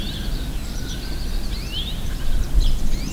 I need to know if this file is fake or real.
fake